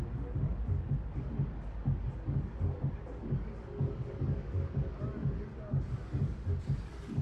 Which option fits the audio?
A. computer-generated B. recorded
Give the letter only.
A